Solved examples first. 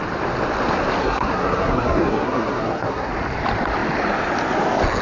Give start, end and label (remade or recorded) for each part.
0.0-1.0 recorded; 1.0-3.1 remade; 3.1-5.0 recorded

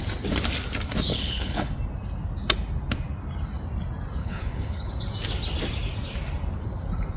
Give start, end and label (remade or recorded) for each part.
0.0-1.1 recorded; 1.1-1.7 remade; 1.7-4.2 recorded; 4.2-4.9 remade; 4.9-7.2 recorded

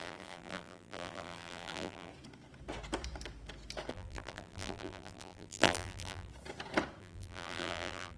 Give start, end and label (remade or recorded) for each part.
0.0-2.1 remade; 2.1-3.9 recorded; 3.9-6.3 remade; 6.3-7.0 recorded; 7.0-8.2 remade

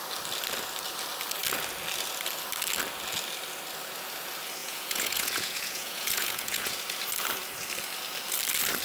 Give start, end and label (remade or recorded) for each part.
0.0-4.6 recorded; 4.6-6.7 remade; 6.7-8.8 recorded

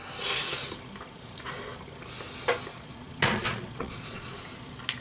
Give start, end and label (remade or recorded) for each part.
0.0-2.7 recorded; 2.7-4.4 remade; 4.4-5.0 recorded

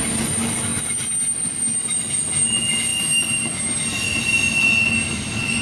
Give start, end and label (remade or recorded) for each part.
0.0-5.6 recorded

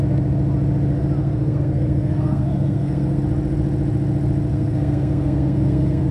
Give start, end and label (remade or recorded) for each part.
0.0-1.2 recorded; 1.2-3.2 remade; 3.2-4.5 recorded; 4.5-6.1 remade

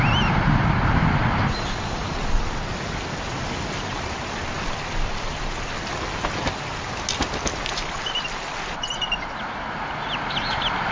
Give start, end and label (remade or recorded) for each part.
0.0-10.9 recorded